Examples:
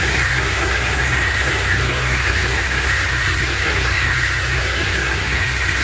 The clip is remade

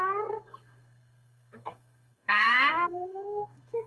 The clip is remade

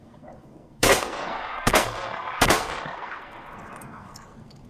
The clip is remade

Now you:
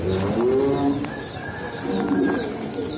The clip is recorded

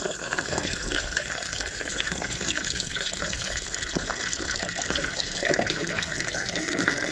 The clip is remade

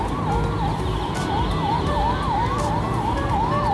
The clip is recorded